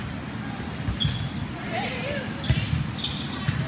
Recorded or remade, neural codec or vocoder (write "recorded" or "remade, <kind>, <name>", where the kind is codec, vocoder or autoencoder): recorded